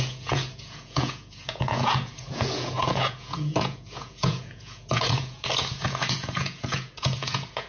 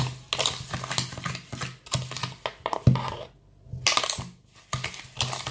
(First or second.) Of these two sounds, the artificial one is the first